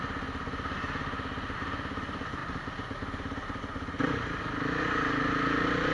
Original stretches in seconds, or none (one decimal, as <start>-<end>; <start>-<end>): 0.0-5.9